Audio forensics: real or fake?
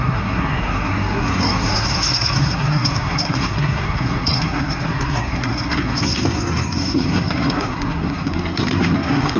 fake